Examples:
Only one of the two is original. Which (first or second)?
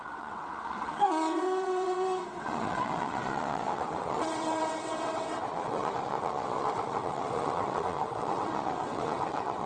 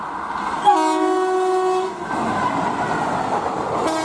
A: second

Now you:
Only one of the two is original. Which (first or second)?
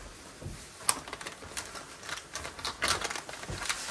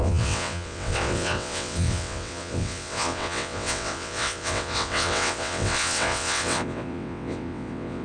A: first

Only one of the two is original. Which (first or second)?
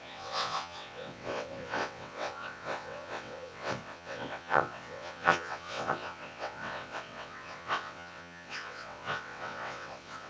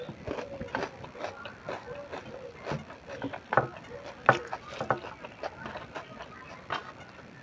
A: second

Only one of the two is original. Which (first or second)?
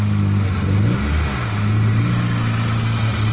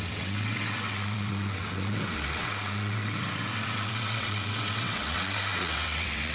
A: first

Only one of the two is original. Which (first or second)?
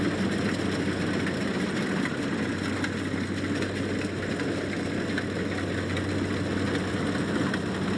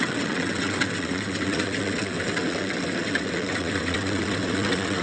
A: first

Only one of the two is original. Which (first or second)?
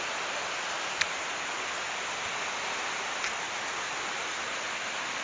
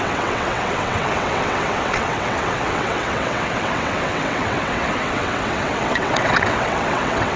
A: first